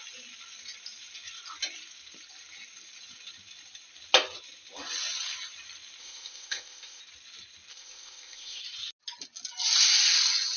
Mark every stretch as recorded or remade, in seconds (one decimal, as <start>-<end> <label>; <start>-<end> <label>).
0.0-6.0 recorded; 6.0-7.0 remade; 7.0-7.7 recorded; 7.7-8.6 remade; 8.6-10.6 recorded